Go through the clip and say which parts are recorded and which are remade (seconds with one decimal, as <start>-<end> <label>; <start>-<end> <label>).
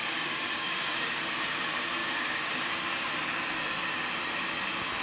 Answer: 0.0-1.2 remade; 1.2-2.0 recorded; 2.0-2.7 remade; 2.7-5.0 recorded